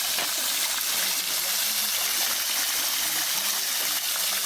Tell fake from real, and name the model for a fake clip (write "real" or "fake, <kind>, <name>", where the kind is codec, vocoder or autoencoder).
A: real